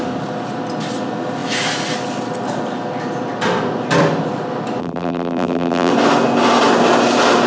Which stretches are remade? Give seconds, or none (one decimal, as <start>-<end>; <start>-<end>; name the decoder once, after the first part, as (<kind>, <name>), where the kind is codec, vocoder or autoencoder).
4.8-5.9 (vocoder, BigVGAN v2)

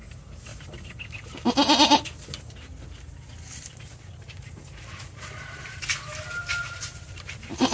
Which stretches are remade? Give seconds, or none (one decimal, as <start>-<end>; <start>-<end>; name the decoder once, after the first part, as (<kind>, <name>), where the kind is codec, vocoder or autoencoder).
0.0-0.5 (vocoder, BigVGAN v2); 3.7-7.7

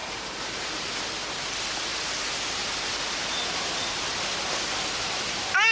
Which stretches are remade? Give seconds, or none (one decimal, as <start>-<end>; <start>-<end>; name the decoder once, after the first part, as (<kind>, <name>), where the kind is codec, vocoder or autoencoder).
0.0-0.9 (vocoder, BigVGAN v2)

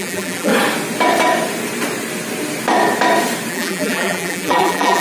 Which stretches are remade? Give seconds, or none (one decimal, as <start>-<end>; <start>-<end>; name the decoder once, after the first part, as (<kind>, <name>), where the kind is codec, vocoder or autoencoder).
0.0-0.5 (vocoder, BigVGAN v2); 3.5-5.0

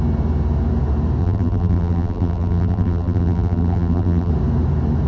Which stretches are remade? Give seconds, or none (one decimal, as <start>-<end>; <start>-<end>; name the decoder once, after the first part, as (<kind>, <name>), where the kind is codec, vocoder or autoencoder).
1.2-4.3 (vocoder, BigVGAN v2)

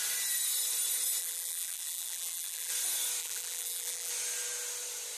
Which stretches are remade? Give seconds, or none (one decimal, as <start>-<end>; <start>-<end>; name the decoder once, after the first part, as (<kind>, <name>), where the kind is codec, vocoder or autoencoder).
1.2-2.7 (vocoder, BigVGAN v2); 3.2-4.1

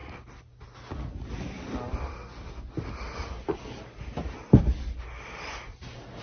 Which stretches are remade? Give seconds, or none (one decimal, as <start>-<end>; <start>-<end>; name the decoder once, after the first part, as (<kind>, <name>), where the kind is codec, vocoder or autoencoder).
none